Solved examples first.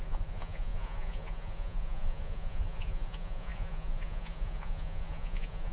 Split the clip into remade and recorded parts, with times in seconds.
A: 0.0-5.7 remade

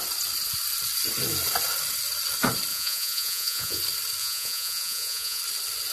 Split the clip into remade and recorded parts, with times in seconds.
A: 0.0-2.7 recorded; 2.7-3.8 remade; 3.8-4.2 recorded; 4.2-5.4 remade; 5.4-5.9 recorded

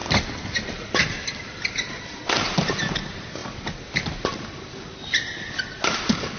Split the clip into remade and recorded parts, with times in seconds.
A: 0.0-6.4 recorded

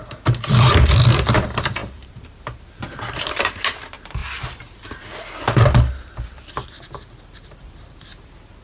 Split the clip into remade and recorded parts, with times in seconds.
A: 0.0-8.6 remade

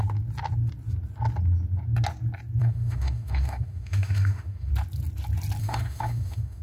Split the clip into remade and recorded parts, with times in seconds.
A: 0.0-2.6 recorded; 2.6-4.7 remade; 4.7-5.6 recorded; 5.6-6.6 remade